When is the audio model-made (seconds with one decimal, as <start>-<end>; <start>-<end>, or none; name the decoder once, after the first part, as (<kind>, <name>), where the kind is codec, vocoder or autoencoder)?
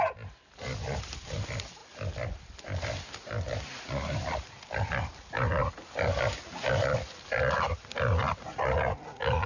0.0-5.6 (vocoder, BigVGAN v2); 6.7-9.5